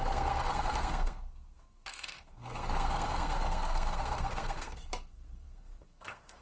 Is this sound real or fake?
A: fake